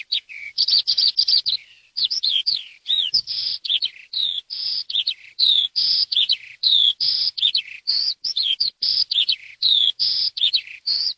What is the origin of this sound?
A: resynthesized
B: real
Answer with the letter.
A